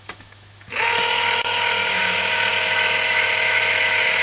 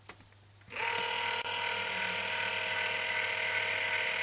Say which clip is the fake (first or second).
first